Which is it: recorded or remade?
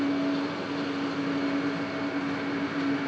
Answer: recorded